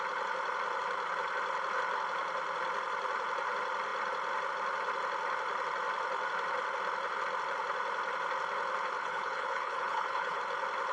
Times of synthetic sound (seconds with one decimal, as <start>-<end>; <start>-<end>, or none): 9.0-10.4